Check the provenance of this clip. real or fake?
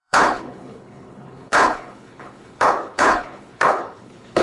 fake